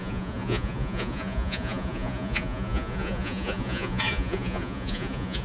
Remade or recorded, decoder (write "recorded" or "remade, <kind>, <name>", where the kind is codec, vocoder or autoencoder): remade, vocoder, Vocos